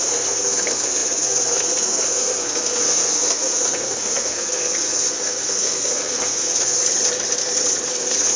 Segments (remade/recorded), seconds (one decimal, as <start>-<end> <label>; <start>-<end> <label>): 0.0-6.8 remade; 6.8-7.9 recorded; 7.9-8.4 remade